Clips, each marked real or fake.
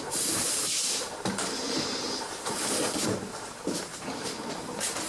fake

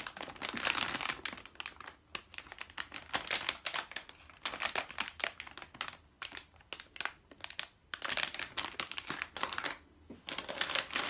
real